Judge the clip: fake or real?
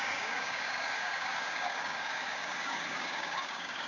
fake